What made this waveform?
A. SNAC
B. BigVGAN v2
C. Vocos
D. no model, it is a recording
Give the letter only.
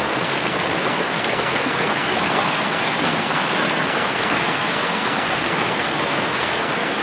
A